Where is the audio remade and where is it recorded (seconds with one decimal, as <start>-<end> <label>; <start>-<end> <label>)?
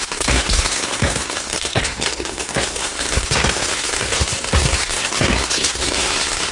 0.0-6.5 remade